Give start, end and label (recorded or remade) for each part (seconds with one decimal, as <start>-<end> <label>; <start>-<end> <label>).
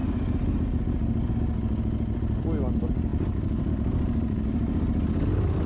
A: 0.0-1.3 recorded; 1.3-4.5 remade; 4.5-5.3 recorded; 5.3-5.7 remade